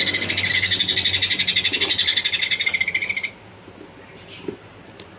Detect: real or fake real